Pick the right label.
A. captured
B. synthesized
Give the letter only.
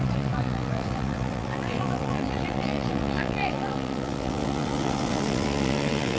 B